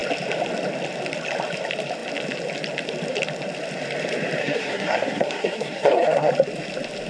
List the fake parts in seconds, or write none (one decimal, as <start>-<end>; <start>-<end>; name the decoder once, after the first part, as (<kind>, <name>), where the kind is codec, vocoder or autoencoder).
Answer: 4.4-6.3 (codec, SNAC)